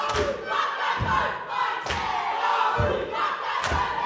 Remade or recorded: recorded